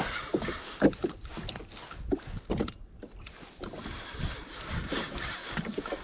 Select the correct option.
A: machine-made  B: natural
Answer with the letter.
B